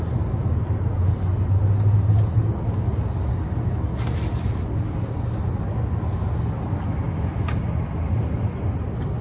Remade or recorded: recorded